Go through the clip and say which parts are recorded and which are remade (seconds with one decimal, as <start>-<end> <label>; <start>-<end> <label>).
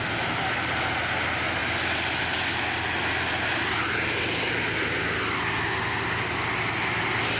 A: 0.0-7.4 recorded